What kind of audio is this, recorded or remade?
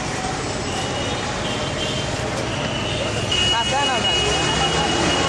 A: recorded